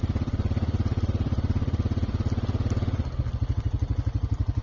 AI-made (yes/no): yes